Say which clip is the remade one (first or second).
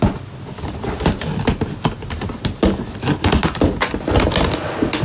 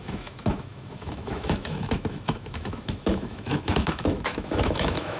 second